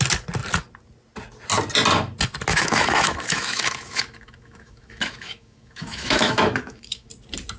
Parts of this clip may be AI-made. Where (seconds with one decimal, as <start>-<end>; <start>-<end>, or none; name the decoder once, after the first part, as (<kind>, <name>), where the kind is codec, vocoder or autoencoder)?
2.5-7.1 (autoencoder, DAC-VAE)